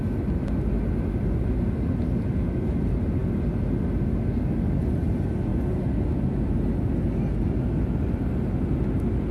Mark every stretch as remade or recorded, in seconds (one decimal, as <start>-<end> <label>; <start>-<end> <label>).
0.0-9.3 recorded